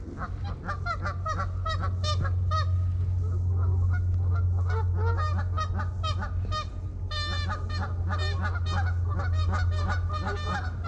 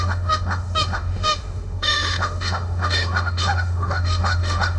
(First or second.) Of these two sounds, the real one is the first